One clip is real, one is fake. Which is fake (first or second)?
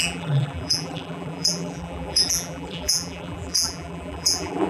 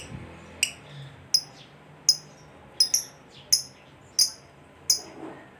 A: first